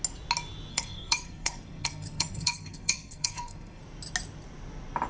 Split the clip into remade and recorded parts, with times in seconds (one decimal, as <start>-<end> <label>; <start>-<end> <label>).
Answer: 0.0-0.7 recorded; 0.7-3.8 remade; 3.8-5.1 recorded